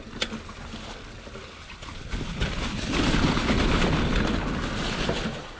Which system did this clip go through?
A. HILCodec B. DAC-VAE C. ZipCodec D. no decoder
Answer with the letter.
D